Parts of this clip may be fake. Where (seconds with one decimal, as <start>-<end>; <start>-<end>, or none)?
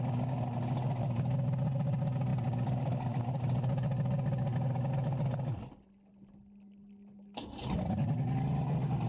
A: none